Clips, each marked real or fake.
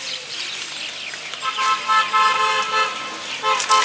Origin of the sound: real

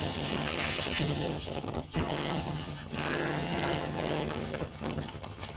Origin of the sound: fake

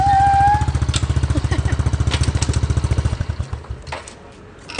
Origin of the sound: real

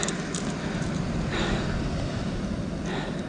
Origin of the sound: real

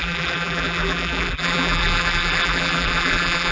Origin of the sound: fake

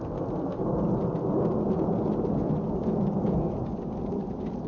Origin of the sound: real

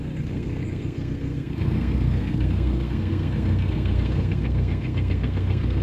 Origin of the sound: fake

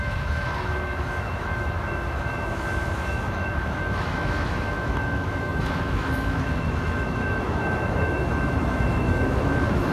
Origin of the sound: fake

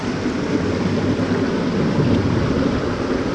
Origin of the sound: real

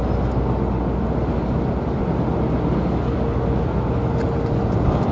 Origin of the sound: real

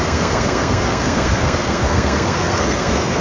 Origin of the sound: fake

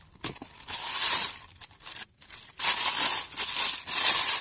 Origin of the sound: real